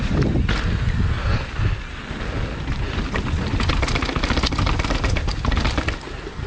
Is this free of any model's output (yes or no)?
yes